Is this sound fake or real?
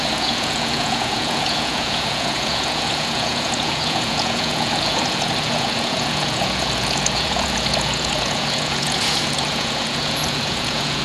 fake